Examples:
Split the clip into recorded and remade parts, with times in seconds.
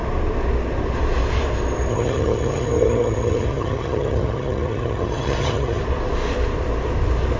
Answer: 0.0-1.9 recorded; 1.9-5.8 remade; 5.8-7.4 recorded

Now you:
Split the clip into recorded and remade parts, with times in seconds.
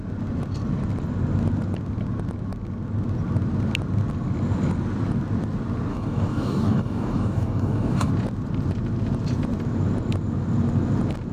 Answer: 0.0-5.9 recorded; 5.9-8.1 remade; 8.1-11.3 recorded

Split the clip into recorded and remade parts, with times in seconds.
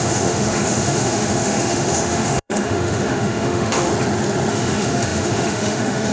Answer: 0.0-3.9 remade; 3.9-4.5 recorded; 4.5-6.1 remade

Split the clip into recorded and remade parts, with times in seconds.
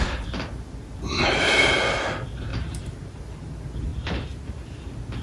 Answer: 0.0-2.5 recorded; 2.5-3.2 remade; 3.2-5.2 recorded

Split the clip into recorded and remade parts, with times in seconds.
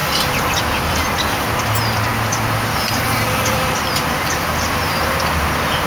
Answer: 0.0-5.9 recorded